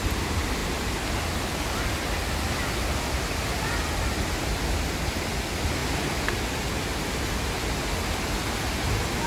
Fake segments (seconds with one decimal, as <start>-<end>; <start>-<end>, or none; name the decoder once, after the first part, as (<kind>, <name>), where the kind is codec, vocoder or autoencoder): none